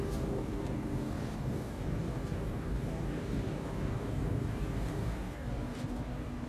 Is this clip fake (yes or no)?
yes